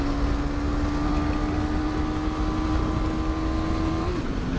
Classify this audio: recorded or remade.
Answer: recorded